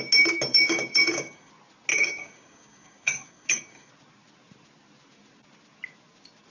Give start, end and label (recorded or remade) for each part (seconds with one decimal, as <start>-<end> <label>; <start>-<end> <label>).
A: 0.0-0.5 recorded; 0.5-1.5 remade; 1.5-1.9 recorded; 1.9-3.9 remade; 3.9-6.5 recorded